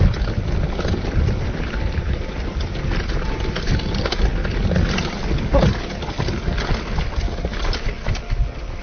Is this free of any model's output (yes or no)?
yes